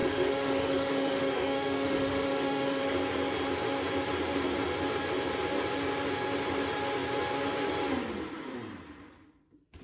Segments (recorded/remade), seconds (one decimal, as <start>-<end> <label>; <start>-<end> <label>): 0.0-2.8 remade; 2.8-9.8 recorded